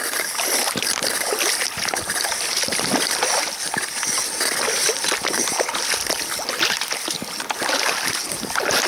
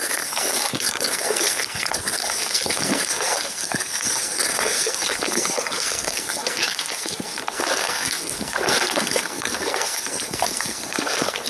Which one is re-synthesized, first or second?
second